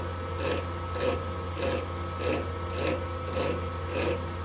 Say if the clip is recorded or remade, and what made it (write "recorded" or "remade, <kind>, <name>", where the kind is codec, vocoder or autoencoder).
recorded